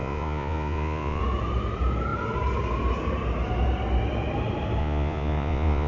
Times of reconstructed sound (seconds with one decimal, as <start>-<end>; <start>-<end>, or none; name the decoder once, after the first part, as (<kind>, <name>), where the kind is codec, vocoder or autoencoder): 0.0-1.2 (vocoder, Vocos); 4.8-5.9